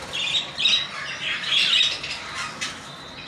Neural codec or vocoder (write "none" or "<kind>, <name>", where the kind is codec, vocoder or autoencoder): none